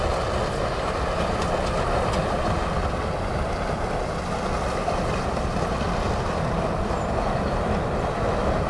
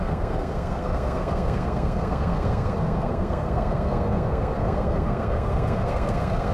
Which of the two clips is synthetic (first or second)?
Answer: second